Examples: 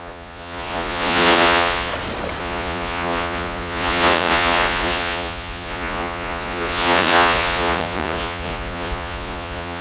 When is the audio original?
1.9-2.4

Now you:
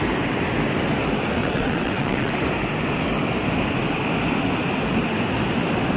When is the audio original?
0.0-1.4; 2.3-6.0

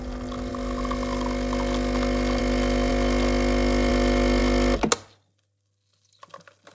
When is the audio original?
0.0-6.7

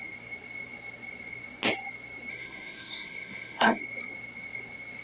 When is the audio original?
0.0-2.3; 3.8-5.0

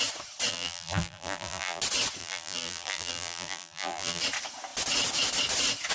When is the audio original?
0.0-0.5; 1.8-2.2; 4.2-5.9